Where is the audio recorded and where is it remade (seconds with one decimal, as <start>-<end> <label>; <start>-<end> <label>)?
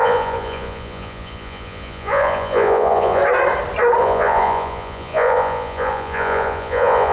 0.0-3.2 remade; 3.2-4.0 recorded; 4.0-7.1 remade